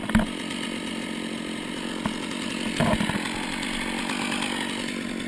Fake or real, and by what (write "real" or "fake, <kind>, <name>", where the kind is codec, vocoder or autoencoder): real